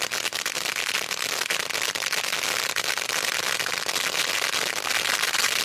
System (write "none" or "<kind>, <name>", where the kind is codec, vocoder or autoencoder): none